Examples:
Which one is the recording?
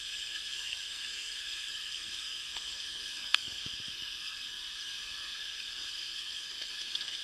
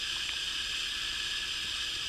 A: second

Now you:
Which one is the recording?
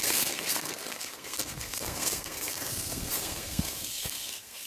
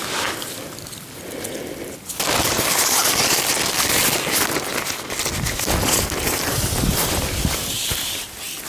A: second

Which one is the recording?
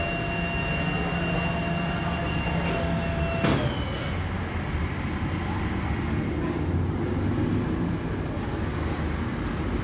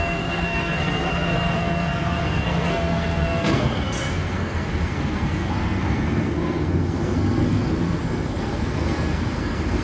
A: first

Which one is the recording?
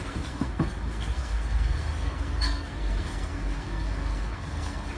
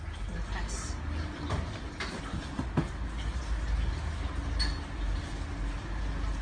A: second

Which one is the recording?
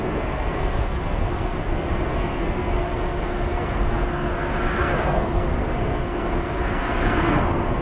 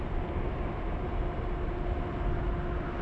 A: second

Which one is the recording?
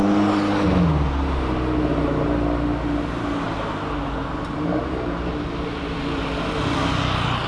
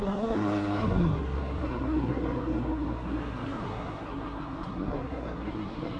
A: first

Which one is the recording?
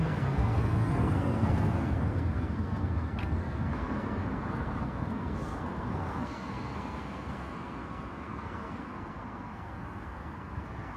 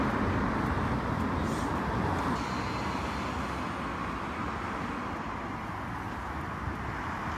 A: second